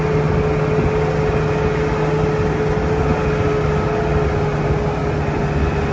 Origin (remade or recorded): recorded